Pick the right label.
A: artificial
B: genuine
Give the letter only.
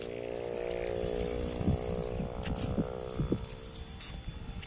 B